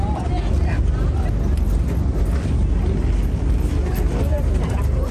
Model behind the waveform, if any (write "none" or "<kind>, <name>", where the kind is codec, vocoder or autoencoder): none